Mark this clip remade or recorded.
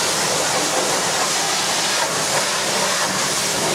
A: recorded